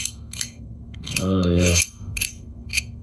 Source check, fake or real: fake